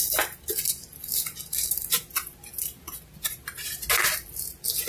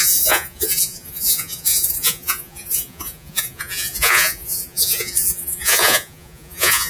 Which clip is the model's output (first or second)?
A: second